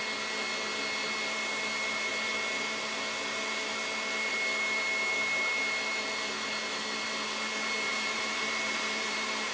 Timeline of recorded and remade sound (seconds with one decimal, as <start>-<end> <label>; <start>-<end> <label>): 0.0-7.9 recorded; 7.9-9.5 remade